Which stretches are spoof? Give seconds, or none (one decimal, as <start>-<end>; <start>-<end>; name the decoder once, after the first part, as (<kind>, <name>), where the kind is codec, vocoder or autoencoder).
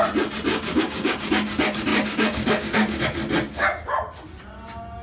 0.5-1.3 (codec, DAC); 1.9-3.0